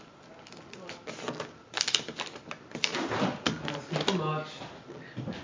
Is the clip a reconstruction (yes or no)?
no